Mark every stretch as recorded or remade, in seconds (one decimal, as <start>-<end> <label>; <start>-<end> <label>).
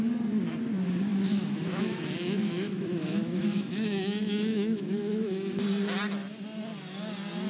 0.0-1.1 recorded; 1.1-5.6 remade; 5.6-7.5 recorded